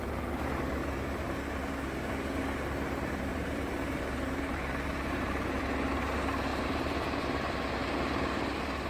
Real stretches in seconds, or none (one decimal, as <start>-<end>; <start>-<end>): 0.0-0.8; 1.6-3.3; 5.6-6.5; 7.2-8.9